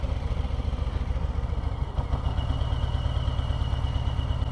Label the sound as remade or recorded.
recorded